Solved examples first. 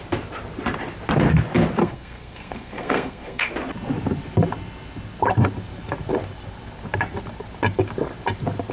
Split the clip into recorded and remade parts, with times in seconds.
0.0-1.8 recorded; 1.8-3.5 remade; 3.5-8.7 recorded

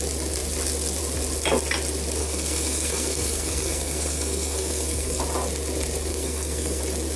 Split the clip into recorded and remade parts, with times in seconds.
0.0-2.2 recorded; 2.2-5.2 remade; 5.2-6.1 recorded; 6.1-6.8 remade; 6.8-7.2 recorded